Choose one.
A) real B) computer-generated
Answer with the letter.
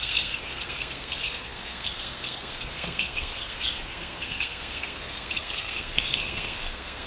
B